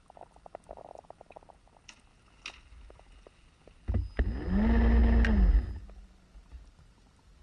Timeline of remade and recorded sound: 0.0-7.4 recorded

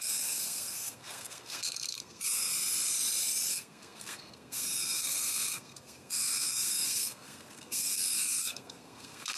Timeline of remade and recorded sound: 0.0-2.5 remade; 2.5-3.5 recorded; 3.5-9.4 remade

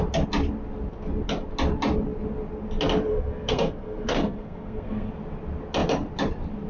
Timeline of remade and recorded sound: 0.0-3.1 recorded; 3.1-5.1 remade; 5.1-6.7 recorded